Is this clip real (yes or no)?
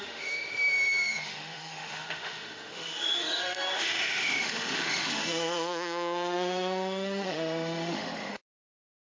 no